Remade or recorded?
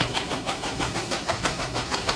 remade